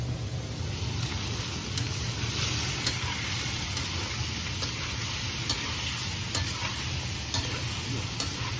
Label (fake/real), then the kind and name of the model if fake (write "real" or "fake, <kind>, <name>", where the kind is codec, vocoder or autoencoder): real